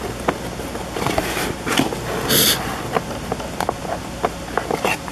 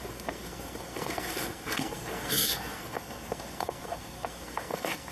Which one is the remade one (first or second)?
second